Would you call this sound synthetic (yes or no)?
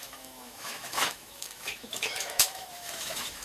yes